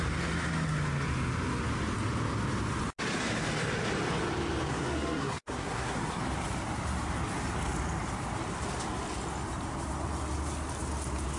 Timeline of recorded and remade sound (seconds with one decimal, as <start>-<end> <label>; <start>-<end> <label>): 0.0-4.7 recorded; 4.7-6.2 remade; 6.2-11.4 recorded